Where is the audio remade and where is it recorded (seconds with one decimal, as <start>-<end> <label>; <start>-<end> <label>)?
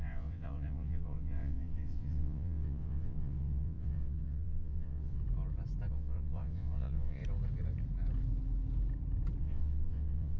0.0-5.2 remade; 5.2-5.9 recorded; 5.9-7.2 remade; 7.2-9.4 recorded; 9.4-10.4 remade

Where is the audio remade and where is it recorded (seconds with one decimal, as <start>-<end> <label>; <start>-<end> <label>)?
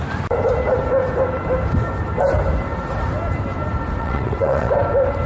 0.0-4.0 recorded; 4.0-4.7 remade; 4.7-5.3 recorded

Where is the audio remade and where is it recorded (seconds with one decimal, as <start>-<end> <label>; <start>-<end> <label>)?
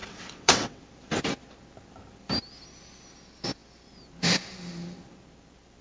0.0-0.8 remade; 0.8-5.8 recorded